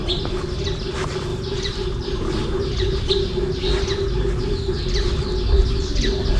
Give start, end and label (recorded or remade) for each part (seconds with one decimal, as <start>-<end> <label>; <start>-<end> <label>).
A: 0.0-1.3 recorded; 1.3-3.7 remade; 3.7-6.4 recorded